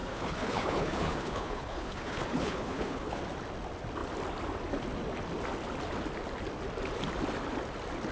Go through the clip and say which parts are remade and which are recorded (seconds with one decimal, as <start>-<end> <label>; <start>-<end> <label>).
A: 0.0-3.2 remade; 3.2-8.1 recorded